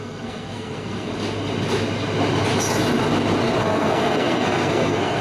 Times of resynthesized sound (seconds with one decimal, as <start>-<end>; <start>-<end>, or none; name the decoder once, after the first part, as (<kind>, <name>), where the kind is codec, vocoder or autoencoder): 0.0-1.1 (codec, SNAC); 3.6-5.2

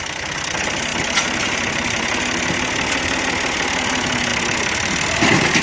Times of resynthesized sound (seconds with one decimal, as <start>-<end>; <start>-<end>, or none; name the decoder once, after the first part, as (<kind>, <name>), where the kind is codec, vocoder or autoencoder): none

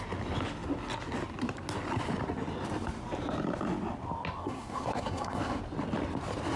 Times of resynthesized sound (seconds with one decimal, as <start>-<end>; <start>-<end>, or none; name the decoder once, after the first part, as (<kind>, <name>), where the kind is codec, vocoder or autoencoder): 4.4-5.6 (codec, SNAC)

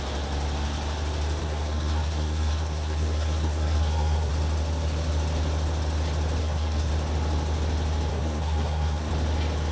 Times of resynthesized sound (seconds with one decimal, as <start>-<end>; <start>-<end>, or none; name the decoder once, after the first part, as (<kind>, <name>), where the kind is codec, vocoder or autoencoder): 1.4-4.3 (codec, SNAC); 6.4-6.9; 8.1-9.1